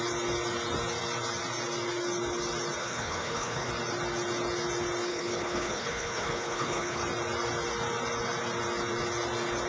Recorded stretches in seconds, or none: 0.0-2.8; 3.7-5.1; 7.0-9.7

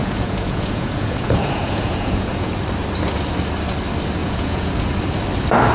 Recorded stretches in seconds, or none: 2.5-4.2; 4.7-5.7

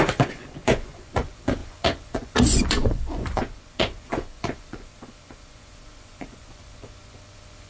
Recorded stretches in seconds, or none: none

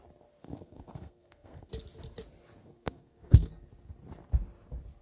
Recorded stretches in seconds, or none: 0.0-0.4; 1.7-2.6; 3.5-5.0